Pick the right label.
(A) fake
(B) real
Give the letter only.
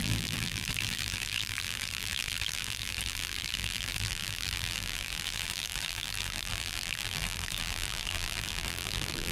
A